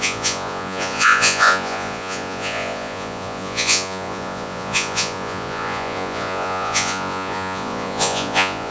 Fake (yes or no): yes